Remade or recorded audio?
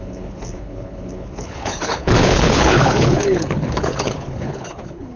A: remade